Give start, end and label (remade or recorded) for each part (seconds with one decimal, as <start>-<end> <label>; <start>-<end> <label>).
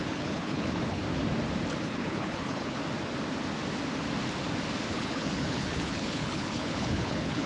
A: 0.0-1.0 remade; 1.0-1.8 recorded; 1.8-2.8 remade; 2.8-4.9 recorded; 4.9-7.5 remade